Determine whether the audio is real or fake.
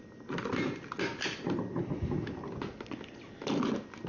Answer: real